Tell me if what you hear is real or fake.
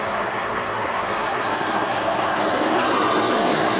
fake